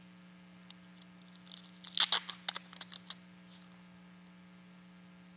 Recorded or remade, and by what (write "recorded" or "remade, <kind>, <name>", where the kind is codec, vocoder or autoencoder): recorded